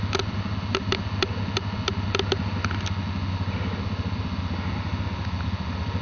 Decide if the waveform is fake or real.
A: real